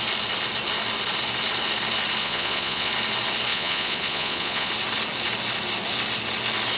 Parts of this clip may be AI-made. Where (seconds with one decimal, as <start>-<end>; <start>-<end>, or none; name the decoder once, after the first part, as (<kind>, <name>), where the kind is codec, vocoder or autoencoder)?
2.2-2.9 (vocoder, Vocos); 3.5-4.7